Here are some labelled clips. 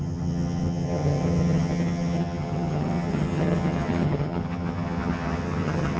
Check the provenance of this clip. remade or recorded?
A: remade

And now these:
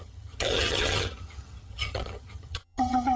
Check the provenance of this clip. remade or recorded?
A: remade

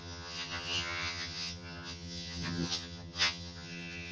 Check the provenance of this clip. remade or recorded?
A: remade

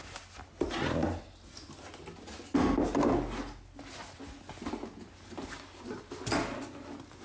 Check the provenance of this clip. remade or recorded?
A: recorded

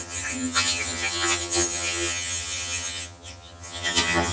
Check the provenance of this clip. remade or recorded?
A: remade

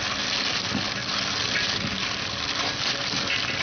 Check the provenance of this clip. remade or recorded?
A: recorded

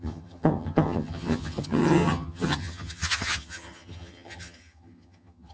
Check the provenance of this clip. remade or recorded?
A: remade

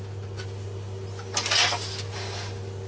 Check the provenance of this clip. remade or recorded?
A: recorded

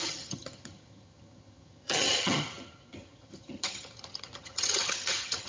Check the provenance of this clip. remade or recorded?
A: remade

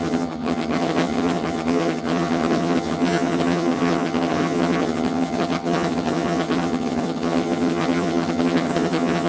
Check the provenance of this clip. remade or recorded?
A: remade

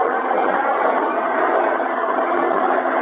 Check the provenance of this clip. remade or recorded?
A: remade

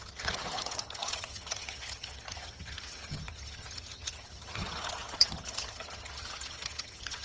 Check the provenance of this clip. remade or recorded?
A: remade